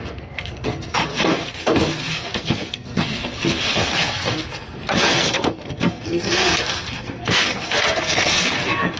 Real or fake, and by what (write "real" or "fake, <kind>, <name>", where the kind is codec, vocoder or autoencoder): fake, codec, SNAC